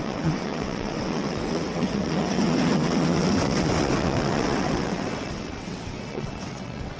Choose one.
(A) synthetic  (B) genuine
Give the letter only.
A